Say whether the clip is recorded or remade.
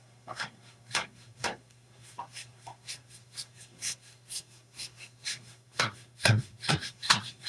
remade